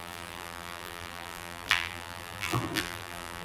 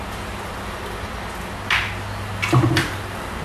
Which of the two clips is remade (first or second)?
first